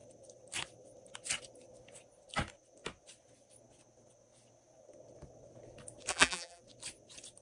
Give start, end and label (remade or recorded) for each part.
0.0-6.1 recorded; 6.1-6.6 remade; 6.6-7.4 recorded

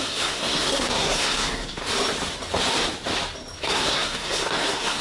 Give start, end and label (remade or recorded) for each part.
0.0-1.8 remade; 1.8-3.6 recorded; 3.6-5.0 remade

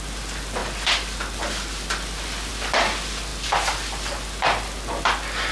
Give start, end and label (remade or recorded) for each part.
0.0-5.5 recorded

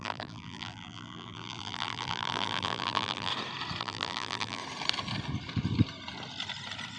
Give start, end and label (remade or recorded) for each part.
0.0-3.3 remade; 3.3-3.8 recorded; 3.8-4.6 remade; 4.6-7.0 recorded

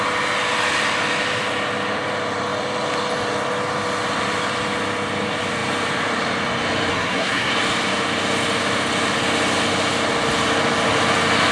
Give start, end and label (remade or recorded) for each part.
0.0-6.9 recorded; 6.9-7.5 remade; 7.5-11.5 recorded